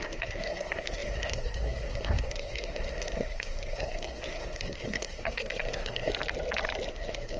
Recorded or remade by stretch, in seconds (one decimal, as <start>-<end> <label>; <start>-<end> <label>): 0.0-6.1 remade; 6.1-6.9 recorded; 6.9-7.4 remade

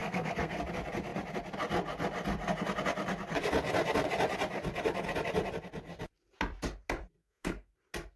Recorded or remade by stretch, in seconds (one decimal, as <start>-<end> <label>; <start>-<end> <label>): 0.0-0.6 remade; 0.6-7.2 recorded; 7.2-7.7 remade; 7.7-8.2 recorded

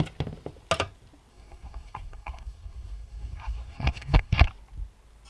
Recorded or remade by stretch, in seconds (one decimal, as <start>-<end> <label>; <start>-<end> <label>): 0.0-1.3 recorded; 1.3-4.5 remade; 4.5-5.3 recorded